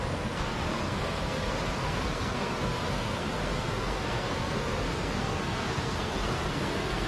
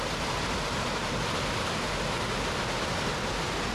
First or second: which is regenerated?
first